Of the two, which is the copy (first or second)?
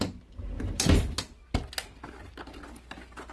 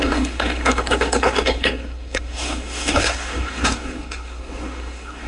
second